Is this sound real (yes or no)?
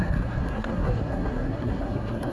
no